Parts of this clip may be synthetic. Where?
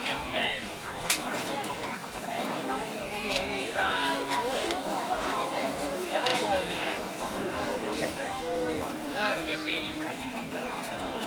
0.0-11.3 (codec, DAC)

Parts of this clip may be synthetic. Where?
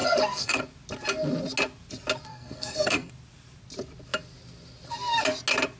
0.0-0.6 (codec, SNAC); 2.3-3.1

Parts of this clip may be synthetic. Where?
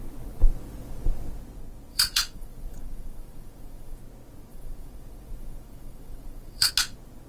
1.9-4.0 (vocoder, Vocos); 4.5-6.7